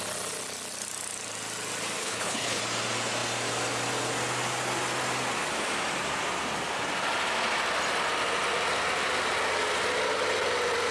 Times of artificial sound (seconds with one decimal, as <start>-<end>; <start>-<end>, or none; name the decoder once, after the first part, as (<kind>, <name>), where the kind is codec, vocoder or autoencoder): 2.0-2.6 (codec, HILCodec)